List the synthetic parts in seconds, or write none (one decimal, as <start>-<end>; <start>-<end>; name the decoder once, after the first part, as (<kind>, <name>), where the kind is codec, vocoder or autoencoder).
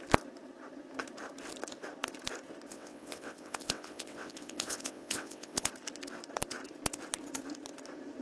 2.7-5.7 (vocoder, WaveNeXt)